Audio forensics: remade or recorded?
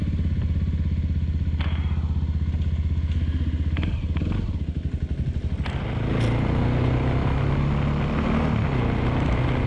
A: recorded